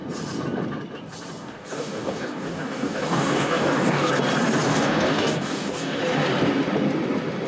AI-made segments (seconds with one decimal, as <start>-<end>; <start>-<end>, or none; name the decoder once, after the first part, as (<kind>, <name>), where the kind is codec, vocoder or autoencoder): 1.4-4.1 (codec, DAC); 4.7-6.0

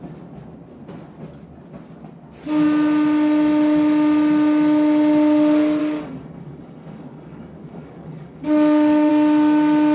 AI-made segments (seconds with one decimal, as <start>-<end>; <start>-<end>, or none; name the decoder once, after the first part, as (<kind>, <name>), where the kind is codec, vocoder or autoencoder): 5.8-9.1 (codec, DAC)

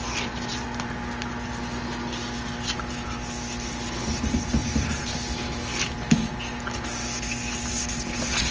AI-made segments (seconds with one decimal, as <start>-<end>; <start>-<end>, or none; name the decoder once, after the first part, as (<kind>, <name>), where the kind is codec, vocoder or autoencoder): none

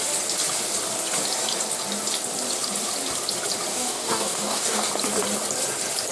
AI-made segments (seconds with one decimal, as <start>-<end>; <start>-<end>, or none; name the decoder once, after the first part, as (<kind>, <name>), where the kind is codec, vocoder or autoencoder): 3.7-4.9 (codec, DAC)

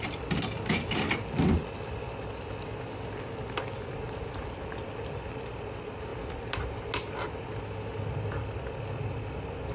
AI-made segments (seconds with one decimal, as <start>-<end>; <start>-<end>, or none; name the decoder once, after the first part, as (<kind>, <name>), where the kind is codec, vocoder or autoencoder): none

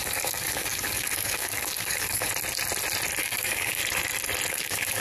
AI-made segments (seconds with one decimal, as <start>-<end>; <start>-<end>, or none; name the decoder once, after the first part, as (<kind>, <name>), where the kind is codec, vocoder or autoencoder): 0.0-2.3 (codec, DAC); 3.2-3.8; 4.5-5.0